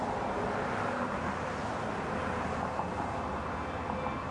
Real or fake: real